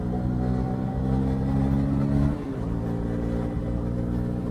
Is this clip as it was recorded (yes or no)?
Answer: yes